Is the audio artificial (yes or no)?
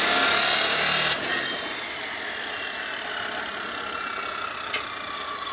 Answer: no